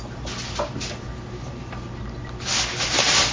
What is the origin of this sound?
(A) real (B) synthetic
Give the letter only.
A